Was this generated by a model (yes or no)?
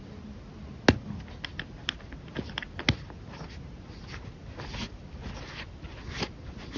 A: no